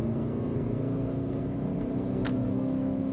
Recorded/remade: remade